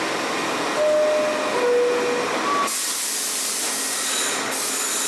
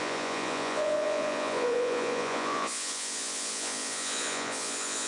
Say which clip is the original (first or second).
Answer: first